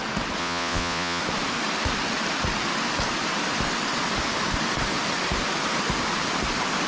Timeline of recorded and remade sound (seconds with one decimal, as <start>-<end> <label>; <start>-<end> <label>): 0.0-0.4 recorded; 0.4-1.2 remade; 1.2-6.9 recorded